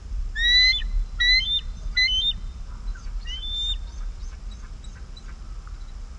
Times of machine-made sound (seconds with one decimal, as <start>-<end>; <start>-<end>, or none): none